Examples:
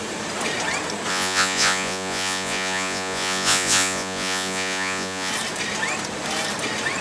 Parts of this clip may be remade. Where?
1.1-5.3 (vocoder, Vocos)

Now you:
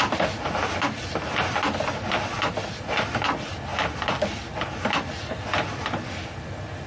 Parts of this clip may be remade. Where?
none

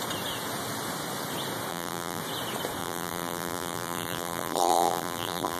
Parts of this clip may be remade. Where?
1.7-2.2 (vocoder, BigVGAN v2); 2.8-5.6

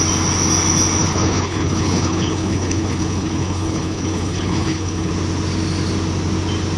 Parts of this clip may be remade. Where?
1.0-5.1 (codec, HILCodec)

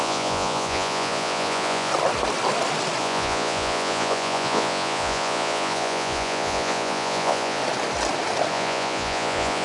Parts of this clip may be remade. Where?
0.0-1.9 (vocoder, Vocos); 3.0-7.6; 8.5-9.6

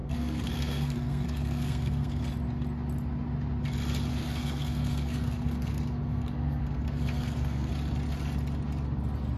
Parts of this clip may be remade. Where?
0.0-2.2 (codec, SNAC); 4.1-7.7

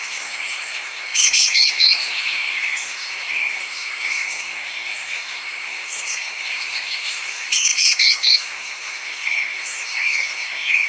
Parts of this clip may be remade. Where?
0.0-10.9 (codec, SNAC)

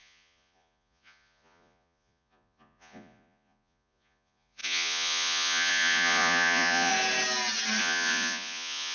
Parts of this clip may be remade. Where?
0.0-6.9 (vocoder, Vocos); 7.8-8.9